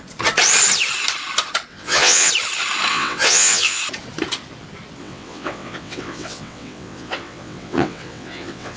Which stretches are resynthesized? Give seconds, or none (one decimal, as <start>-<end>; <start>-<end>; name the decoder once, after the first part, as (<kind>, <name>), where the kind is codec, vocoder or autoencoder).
1.7-2.3 (vocoder, WaveNeXt); 2.9-3.8; 5.0-8.8